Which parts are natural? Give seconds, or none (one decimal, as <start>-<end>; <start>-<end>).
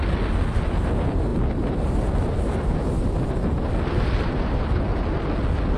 0.0-5.8